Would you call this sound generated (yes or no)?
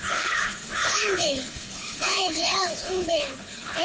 yes